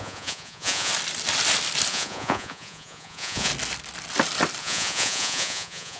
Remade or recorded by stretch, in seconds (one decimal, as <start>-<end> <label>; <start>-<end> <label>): 0.0-0.9 remade; 0.9-1.9 recorded; 1.9-3.5 remade; 3.5-4.6 recorded; 4.6-6.0 remade

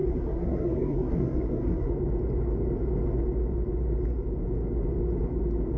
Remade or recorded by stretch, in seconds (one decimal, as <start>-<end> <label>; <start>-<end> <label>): 0.0-1.9 remade; 1.9-5.8 recorded